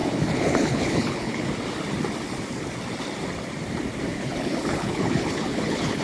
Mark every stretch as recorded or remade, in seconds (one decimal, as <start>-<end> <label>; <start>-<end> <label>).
0.0-1.5 remade; 1.5-4.1 recorded; 4.1-6.0 remade